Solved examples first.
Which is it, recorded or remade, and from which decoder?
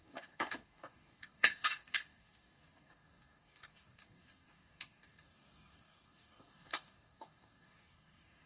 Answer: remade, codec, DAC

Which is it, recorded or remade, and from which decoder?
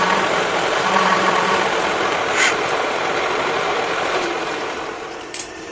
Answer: remade, vocoder, BigVGAN v2